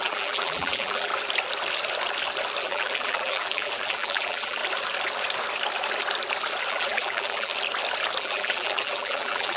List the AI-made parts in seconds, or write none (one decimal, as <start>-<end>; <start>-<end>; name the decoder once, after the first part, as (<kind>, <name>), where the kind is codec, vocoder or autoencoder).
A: 0.0-1.1 (vocoder, BigVGAN v2); 2.6-4.6; 6.7-7.5; 8.2-9.6